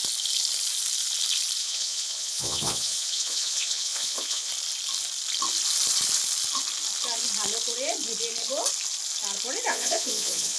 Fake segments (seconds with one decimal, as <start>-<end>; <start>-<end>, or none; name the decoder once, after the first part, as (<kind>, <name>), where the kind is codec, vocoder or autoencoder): 1.6-4.5 (vocoder, Vocos); 9.7-10.6